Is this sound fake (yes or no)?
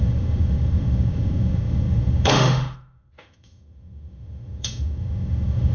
yes